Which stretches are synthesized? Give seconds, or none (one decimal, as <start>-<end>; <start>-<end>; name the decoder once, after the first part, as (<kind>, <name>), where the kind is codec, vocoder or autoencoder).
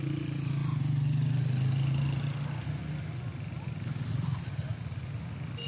0.0-0.6 (vocoder, BigVGAN v2); 4.0-4.7